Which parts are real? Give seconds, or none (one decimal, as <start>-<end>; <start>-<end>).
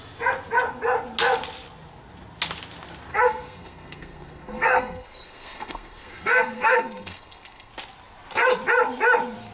0.0-3.1; 7.7-9.5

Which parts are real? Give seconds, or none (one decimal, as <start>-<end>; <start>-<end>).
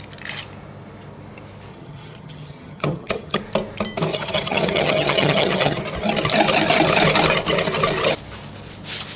0.0-1.7; 3.4-4.1; 5.8-9.2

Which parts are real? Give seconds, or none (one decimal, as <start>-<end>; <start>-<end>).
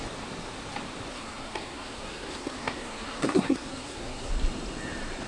0.0-1.1; 4.3-5.3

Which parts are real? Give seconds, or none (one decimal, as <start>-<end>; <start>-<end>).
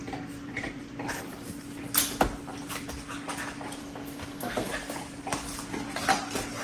0.0-3.8; 4.7-6.6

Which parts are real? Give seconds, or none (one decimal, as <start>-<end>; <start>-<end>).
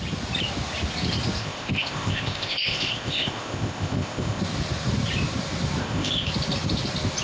0.0-1.4; 4.4-5.8; 6.3-7.2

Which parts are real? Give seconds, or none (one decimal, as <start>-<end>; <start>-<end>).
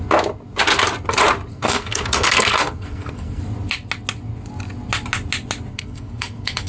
0.0-1.5; 3.4-5.7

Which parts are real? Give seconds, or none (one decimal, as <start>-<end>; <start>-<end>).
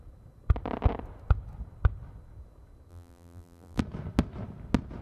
0.0-2.9; 3.8-5.0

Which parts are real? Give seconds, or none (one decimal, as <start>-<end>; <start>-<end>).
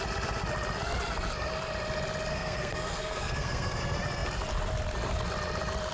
0.0-2.3; 3.8-5.9